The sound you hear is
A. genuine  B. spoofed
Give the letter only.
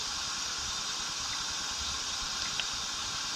A